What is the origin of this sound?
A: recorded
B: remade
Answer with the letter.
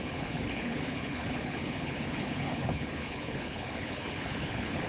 B